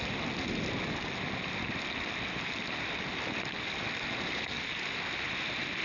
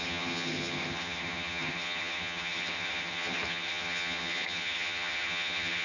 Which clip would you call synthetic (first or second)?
second